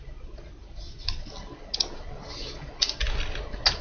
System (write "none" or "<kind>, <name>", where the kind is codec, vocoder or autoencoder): none